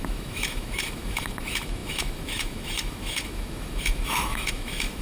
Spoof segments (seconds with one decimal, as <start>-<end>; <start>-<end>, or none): 0.0-5.0

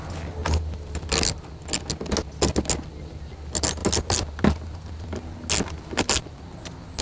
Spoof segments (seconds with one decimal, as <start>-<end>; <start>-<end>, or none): none

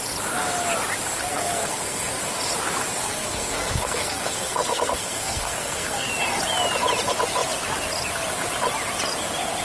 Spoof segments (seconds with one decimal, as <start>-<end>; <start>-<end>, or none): 1.3-2.2; 3.0-6.1